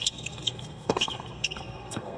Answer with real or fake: fake